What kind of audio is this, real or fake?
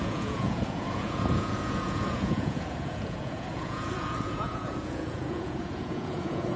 fake